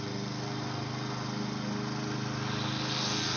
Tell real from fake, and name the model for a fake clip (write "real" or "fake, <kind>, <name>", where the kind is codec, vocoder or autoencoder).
real